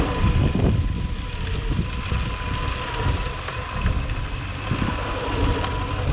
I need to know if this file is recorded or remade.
remade